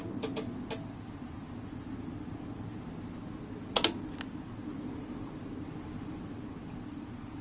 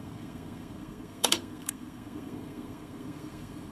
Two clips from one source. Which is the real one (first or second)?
first